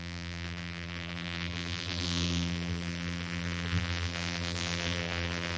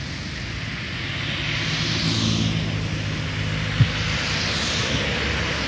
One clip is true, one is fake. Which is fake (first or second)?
first